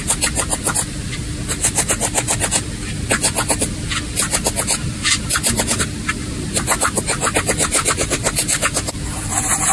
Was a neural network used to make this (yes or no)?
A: yes